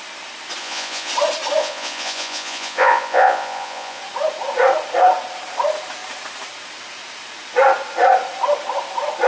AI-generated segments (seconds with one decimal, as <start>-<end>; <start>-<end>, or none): 0.6-1.1; 1.6-4.0